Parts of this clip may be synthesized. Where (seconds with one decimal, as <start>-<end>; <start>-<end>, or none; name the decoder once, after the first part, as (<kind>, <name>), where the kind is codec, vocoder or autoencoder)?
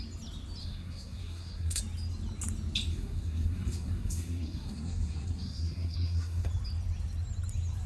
0.6-1.8 (codec, SNAC); 2.9-6.5